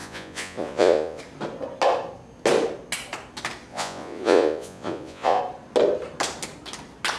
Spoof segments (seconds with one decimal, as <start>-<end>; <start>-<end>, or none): 0.0-1.2; 3.7-5.4